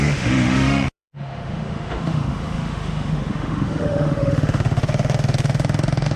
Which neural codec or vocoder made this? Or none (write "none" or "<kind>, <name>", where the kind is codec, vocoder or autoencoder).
autoencoder, DAC-VAE